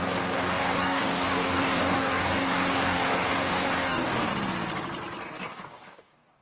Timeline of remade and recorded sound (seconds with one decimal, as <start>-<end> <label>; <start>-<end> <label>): 0.0-4.3 remade; 4.3-5.2 recorded; 5.2-6.4 remade